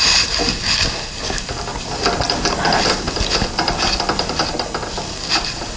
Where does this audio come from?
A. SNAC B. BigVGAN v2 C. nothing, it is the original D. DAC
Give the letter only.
C